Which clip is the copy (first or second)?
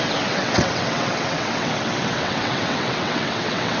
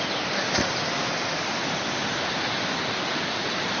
first